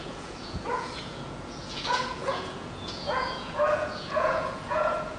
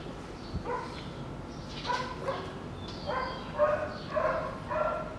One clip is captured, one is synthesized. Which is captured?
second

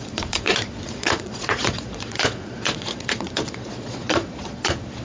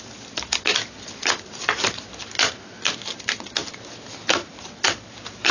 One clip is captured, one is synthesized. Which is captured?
second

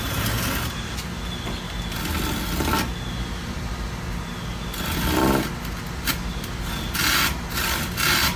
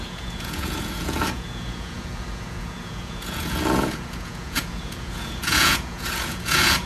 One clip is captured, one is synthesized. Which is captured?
first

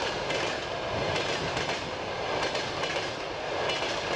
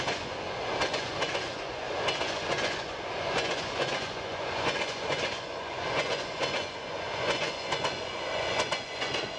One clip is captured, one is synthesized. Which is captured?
first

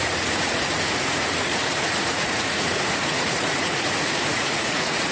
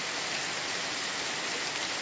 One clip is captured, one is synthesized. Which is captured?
second